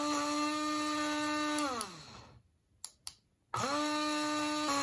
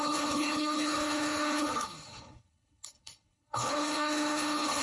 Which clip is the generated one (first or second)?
second